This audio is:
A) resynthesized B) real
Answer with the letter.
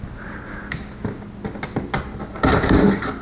B